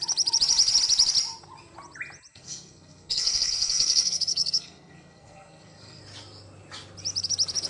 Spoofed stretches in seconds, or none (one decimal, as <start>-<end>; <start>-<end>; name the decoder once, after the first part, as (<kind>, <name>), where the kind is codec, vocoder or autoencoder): 2.3-6.0 (codec, SNAC)